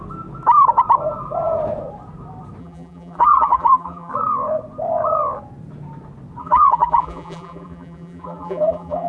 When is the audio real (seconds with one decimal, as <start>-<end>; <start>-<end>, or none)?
0.0-2.6; 4.1-6.4